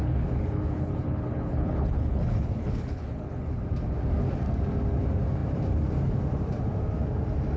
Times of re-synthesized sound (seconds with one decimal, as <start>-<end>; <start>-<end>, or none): 0.0-3.6